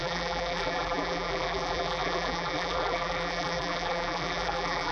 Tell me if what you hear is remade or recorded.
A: remade